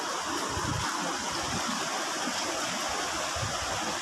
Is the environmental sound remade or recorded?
recorded